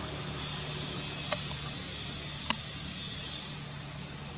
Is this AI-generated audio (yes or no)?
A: no